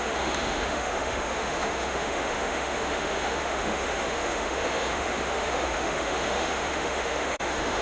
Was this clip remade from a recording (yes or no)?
yes